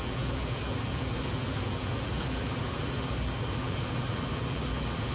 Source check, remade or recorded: remade